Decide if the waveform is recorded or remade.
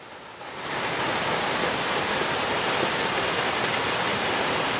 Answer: recorded